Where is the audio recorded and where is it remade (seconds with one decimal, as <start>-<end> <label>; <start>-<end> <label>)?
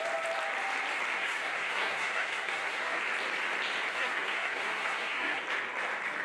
0.0-1.1 recorded; 1.1-3.0 remade; 3.0-3.9 recorded; 3.9-5.4 remade; 5.4-6.2 recorded